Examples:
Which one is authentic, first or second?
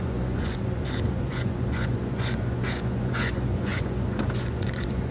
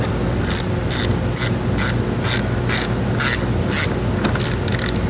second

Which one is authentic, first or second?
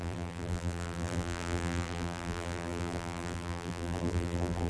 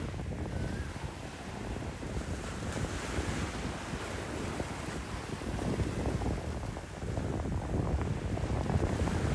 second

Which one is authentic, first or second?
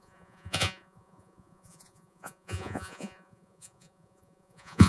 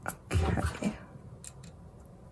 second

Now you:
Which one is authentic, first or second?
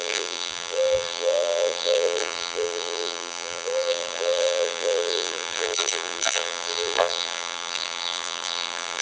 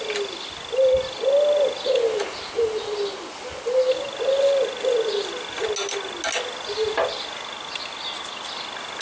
second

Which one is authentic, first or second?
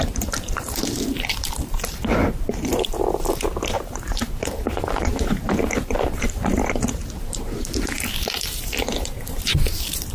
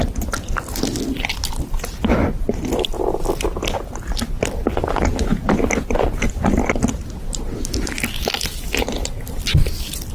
second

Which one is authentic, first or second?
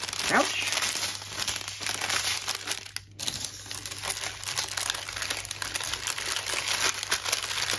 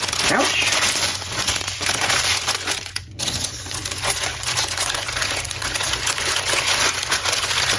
first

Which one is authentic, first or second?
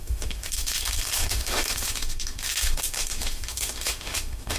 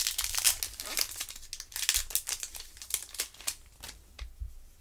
second